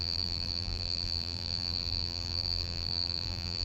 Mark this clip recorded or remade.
remade